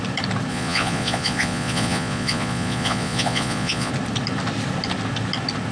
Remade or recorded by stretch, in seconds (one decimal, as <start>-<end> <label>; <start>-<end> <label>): 0.0-0.5 recorded; 0.5-3.9 remade; 3.9-5.7 recorded